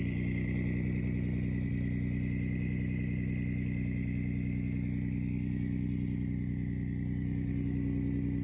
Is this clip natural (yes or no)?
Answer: yes